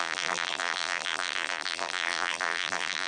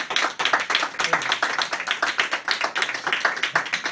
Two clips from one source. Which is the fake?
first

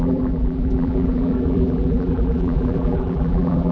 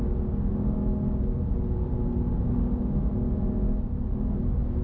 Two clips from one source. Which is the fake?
first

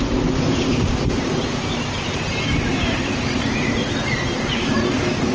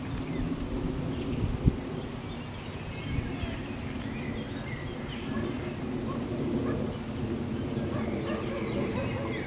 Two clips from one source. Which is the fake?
first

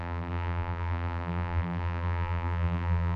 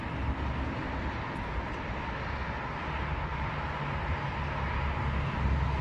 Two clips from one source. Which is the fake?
first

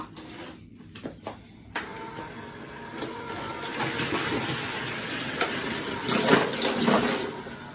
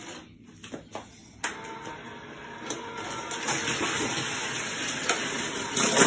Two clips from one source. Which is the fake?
first